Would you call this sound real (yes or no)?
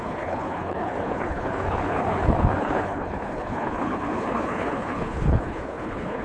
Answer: no